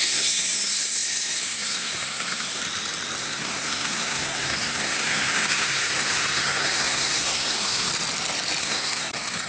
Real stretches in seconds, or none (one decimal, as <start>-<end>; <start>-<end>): 2.6-3.2; 7.9-8.6